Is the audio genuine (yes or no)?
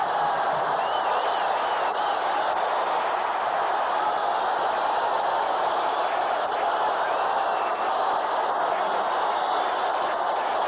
yes